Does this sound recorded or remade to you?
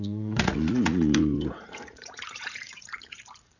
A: remade